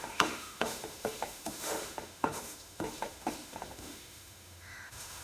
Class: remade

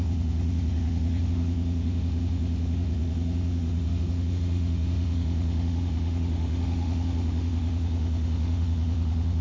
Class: remade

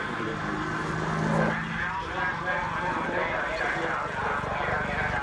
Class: recorded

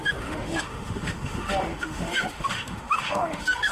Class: remade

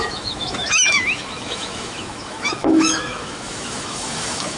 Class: remade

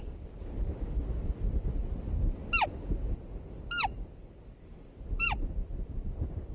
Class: recorded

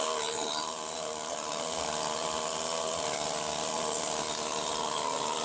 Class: recorded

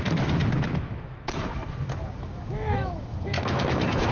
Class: remade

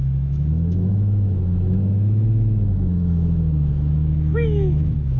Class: remade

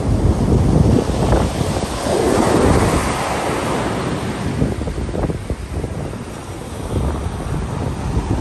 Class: recorded